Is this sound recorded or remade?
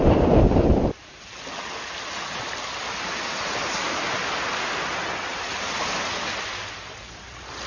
recorded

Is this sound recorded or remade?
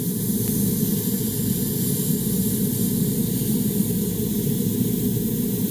recorded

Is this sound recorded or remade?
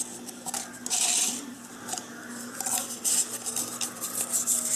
recorded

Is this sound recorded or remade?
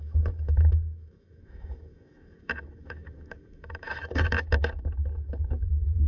remade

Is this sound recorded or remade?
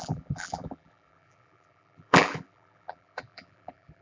remade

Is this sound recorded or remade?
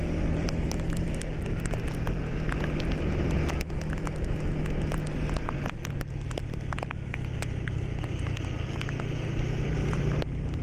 recorded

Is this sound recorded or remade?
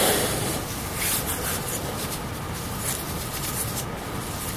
recorded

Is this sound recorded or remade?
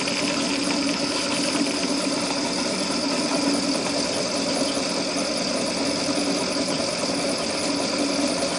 recorded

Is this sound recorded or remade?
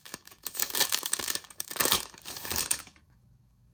remade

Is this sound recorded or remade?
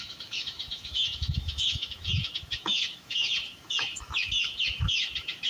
remade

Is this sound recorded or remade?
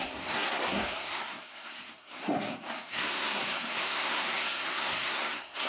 remade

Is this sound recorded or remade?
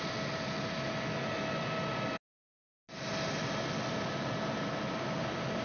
recorded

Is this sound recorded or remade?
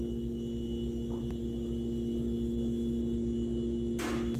recorded